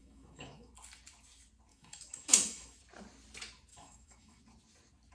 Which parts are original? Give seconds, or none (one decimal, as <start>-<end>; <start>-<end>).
0.7-1.7; 2.8-3.7; 4.4-5.1